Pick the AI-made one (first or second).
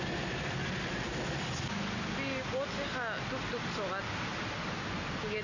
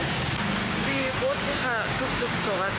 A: second